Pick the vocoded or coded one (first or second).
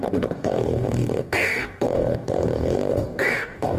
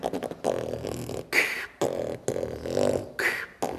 first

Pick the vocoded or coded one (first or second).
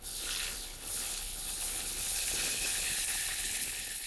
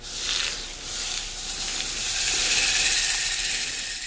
first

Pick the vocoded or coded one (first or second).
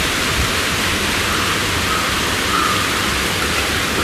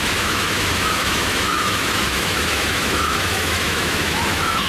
second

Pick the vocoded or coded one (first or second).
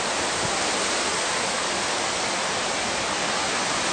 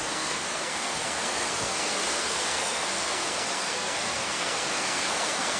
second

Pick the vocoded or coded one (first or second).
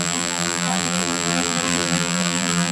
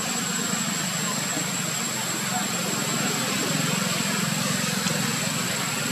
first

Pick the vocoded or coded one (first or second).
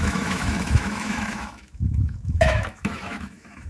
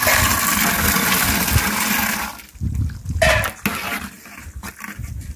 first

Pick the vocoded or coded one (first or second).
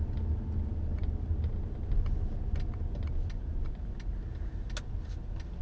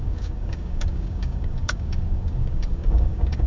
second